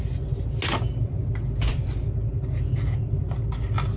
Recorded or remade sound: recorded